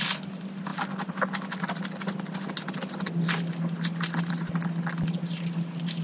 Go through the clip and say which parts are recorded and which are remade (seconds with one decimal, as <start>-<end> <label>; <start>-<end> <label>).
0.0-6.0 recorded